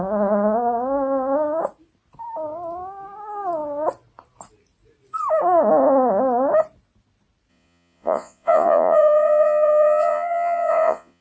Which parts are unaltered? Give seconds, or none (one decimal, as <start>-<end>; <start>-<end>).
0.0-7.5